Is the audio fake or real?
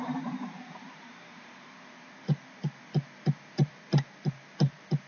fake